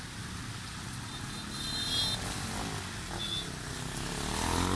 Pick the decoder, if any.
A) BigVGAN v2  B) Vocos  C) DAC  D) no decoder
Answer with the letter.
D